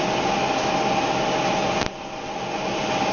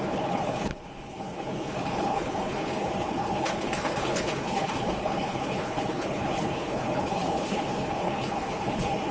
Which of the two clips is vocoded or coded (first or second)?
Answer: second